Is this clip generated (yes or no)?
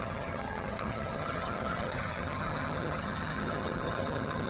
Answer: yes